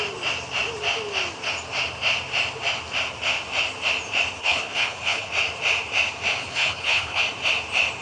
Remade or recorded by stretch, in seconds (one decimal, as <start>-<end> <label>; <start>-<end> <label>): 0.0-4.4 recorded; 4.4-5.3 remade; 5.3-6.4 recorded; 6.4-7.2 remade; 7.2-8.0 recorded